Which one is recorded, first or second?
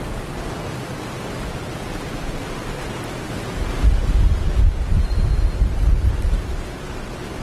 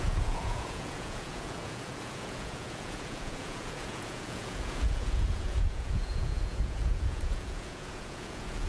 first